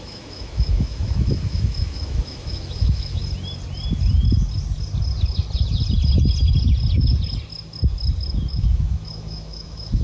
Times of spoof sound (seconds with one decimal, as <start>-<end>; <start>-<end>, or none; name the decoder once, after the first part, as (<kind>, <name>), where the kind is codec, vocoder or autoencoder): 0.0-3.2 (autoencoder, DAC-VAE); 8.5-10.0